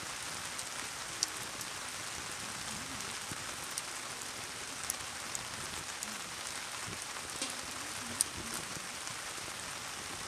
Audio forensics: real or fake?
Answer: real